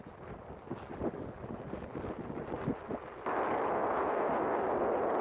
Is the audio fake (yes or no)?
no